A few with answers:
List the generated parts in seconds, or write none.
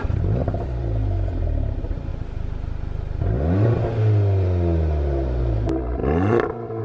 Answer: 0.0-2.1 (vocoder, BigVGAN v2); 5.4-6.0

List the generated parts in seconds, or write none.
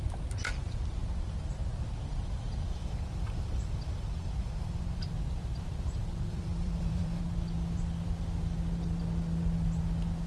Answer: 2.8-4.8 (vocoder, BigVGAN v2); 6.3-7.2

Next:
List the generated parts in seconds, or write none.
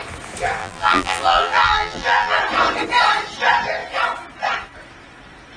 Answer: 0.6-2.4 (vocoder, BigVGAN v2)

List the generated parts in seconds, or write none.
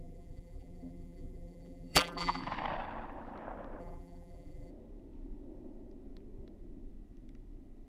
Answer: 0.0-2.4 (vocoder, BigVGAN v2); 3.8-4.7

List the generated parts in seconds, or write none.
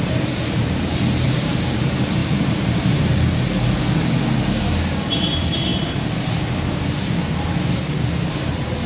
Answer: 0.0-2.2 (vocoder, BigVGAN v2); 5.0-8.9